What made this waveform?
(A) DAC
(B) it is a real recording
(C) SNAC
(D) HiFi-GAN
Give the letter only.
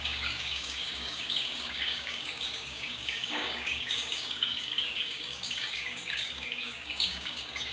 A